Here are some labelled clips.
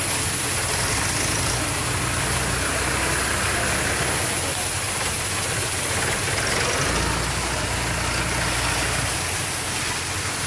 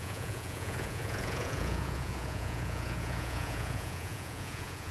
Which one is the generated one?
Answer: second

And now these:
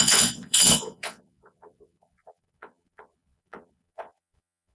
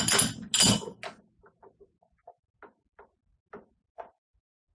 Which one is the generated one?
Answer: first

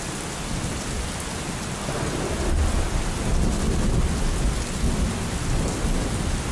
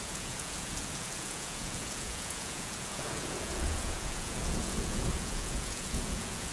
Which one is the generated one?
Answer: second